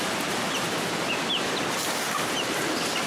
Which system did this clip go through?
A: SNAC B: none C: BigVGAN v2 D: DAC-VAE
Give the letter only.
C